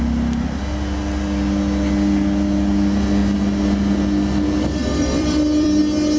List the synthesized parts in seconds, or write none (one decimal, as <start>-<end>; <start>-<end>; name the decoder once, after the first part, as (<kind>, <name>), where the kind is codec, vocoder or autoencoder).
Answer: 4.8-5.8 (vocoder, BigVGAN v2)